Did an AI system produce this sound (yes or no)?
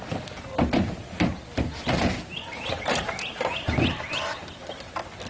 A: no